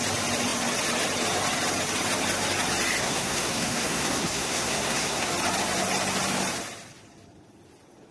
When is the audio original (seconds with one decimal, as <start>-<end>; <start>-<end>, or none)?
0.0-3.0; 5.3-8.1